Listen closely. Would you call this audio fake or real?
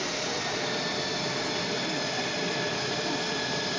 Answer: real